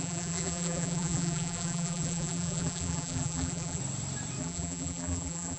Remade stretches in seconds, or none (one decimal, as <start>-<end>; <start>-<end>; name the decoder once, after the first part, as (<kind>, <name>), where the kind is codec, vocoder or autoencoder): 0.0-3.8 (vocoder, BigVGAN v2); 4.4-5.6